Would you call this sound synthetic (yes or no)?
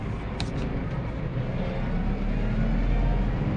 no